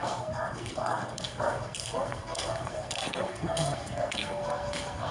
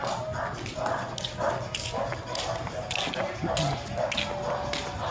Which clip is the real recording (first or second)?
second